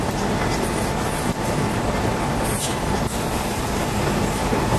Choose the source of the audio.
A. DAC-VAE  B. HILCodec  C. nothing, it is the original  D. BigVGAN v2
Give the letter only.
C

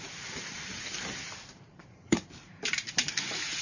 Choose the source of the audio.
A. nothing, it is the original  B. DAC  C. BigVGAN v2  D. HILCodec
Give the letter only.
C